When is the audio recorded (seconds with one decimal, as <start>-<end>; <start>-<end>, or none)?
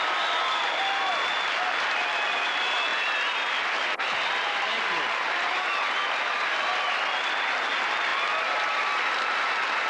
0.0-2.9; 6.5-9.9